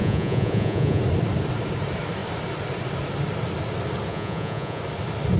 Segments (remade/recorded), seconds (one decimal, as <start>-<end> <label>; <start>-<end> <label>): 0.0-1.0 remade; 1.0-4.1 recorded; 4.1-4.8 remade; 4.8-5.4 recorded